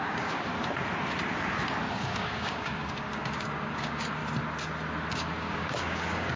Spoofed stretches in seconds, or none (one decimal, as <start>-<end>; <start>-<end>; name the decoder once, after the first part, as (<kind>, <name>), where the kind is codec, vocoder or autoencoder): 0.0-0.5 (codec, DAC); 1.9-4.2; 5.1-6.4